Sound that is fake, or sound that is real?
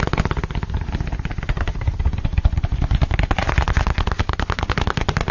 real